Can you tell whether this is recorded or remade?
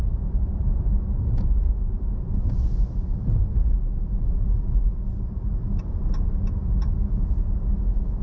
recorded